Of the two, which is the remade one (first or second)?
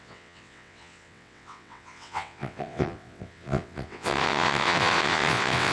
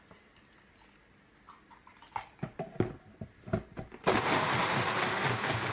first